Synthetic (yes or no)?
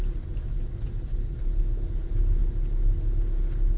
no